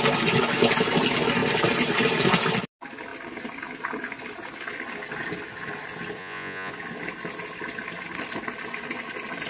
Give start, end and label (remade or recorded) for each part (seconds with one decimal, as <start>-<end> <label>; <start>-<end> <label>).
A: 0.0-6.2 recorded; 6.2-6.7 remade; 6.7-9.5 recorded